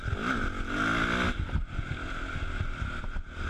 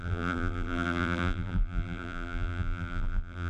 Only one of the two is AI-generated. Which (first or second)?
second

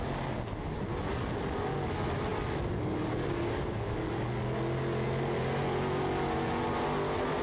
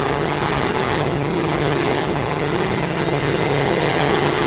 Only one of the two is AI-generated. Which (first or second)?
second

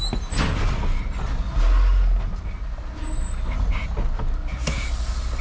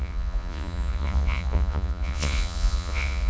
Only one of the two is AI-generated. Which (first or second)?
second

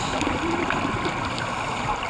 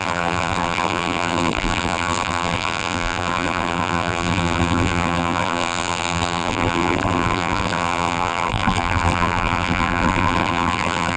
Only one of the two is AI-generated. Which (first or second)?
second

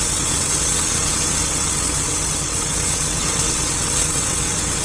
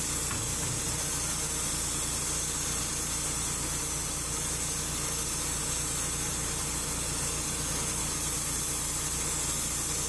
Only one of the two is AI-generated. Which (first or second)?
first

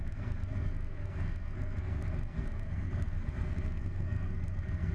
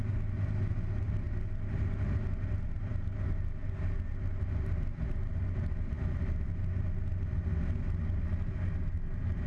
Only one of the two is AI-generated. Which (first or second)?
first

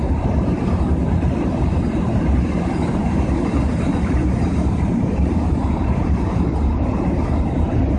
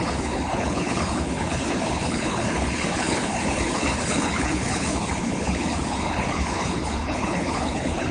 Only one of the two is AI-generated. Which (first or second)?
second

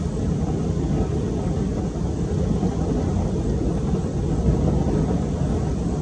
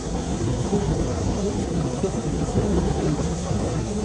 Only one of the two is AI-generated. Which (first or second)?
second